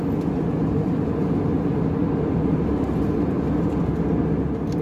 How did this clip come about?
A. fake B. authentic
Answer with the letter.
B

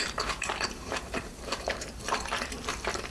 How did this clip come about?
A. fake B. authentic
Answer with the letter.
A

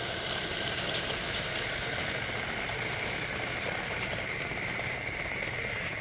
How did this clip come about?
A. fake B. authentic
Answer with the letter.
A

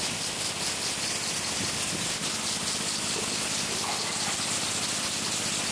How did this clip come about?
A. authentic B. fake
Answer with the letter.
A